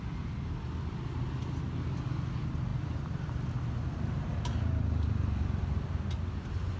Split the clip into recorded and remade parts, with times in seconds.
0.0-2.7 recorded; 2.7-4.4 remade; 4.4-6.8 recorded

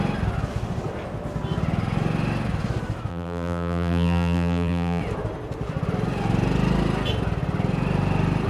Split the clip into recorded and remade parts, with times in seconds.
0.0-3.1 recorded; 3.1-5.0 remade; 5.0-8.5 recorded

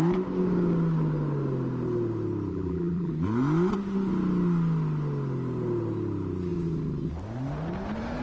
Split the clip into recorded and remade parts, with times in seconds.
0.0-2.5 recorded; 2.5-3.1 remade; 3.1-8.2 recorded

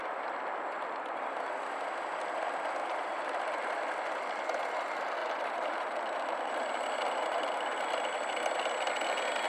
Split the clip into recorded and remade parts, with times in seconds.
0.0-2.8 recorded; 2.8-3.4 remade; 3.4-5.2 recorded; 5.2-6.7 remade; 6.7-9.5 recorded

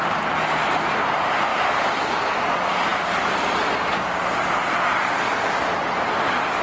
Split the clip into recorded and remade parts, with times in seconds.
0.0-6.6 recorded

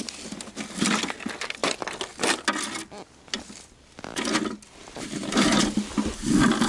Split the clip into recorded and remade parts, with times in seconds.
0.0-6.7 recorded

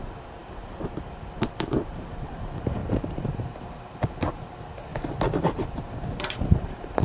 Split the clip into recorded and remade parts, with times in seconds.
0.0-7.0 remade